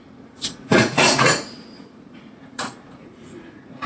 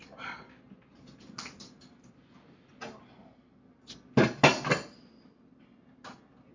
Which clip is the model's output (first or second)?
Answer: first